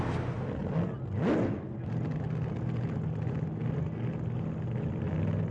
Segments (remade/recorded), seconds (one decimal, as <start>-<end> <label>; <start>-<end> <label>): 0.0-5.5 recorded